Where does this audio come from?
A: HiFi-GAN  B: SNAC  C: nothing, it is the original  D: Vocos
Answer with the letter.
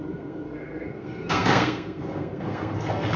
B